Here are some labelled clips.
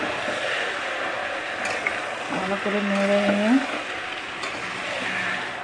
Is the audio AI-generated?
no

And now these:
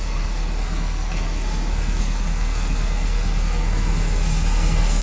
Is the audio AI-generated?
yes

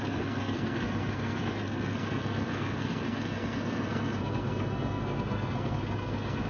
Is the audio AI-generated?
yes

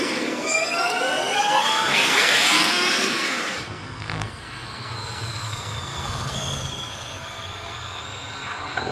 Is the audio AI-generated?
yes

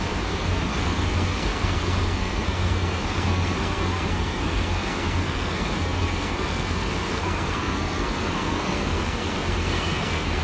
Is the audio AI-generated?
yes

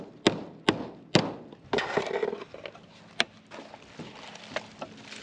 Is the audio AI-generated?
no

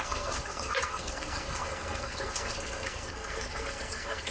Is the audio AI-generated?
yes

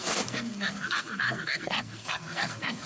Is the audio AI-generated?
yes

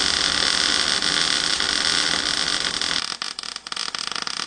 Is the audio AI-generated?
no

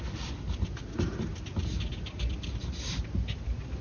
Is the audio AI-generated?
no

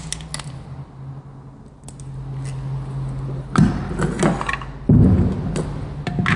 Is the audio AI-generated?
no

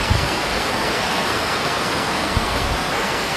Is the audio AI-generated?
yes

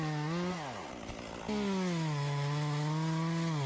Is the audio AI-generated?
no